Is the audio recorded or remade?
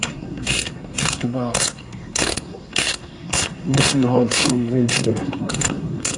remade